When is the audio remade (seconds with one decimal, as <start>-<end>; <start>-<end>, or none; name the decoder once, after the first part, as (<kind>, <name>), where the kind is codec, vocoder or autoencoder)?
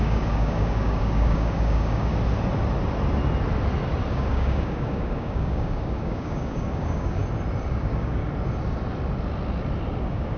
0.0-2.1 (codec, DAC); 4.1-7.2; 7.8-8.2; 10.0-10.4